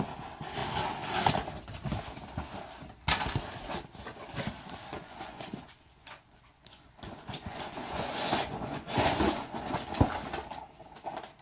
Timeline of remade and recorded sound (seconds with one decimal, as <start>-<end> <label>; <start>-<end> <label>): 0.0-4.9 recorded; 4.9-9.8 remade; 9.8-11.4 recorded